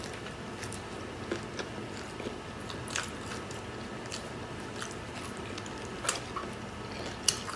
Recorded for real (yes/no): yes